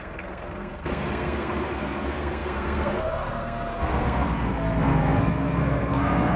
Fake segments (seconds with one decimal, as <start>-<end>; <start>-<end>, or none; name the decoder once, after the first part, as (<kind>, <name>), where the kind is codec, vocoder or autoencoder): 0.0-6.4 (codec, SNAC)